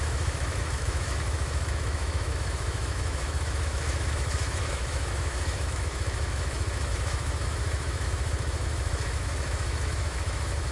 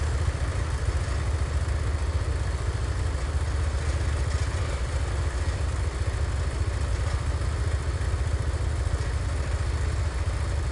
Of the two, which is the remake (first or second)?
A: first